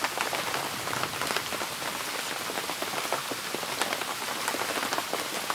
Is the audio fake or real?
real